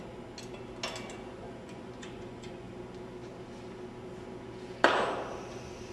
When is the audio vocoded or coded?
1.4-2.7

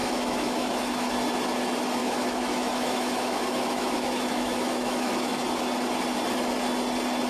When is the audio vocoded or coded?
0.0-1.1; 2.0-5.3

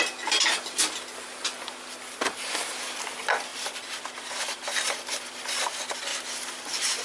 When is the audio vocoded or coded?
3.5-4.0

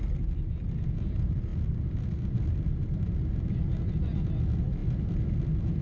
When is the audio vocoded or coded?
none